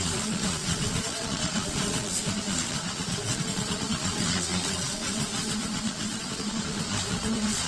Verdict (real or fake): fake